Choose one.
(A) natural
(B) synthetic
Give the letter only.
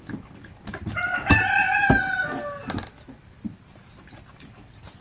A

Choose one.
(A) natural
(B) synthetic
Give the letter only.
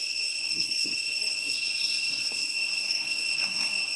B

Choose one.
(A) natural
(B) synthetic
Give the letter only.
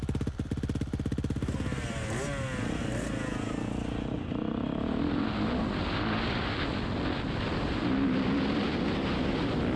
A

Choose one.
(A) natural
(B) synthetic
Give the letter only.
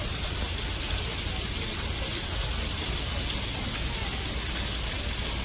A